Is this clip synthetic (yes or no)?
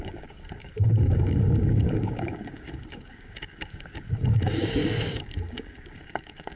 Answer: yes